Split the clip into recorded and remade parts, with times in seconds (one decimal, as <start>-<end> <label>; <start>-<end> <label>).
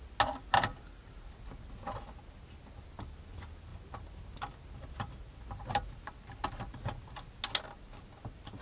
0.0-8.6 recorded